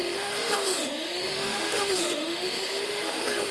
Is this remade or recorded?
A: remade